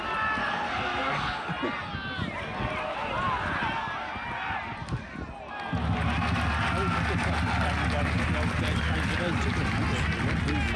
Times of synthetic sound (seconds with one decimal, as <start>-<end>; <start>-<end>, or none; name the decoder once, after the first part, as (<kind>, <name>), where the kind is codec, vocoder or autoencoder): 0.4-1.5 (codec, SNAC)